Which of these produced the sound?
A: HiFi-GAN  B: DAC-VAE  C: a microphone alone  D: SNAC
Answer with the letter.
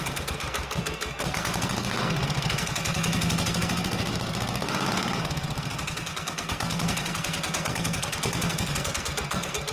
D